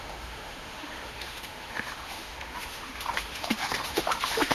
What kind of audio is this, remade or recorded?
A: remade